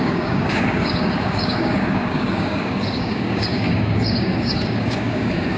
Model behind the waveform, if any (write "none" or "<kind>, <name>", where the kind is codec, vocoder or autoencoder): codec, DAC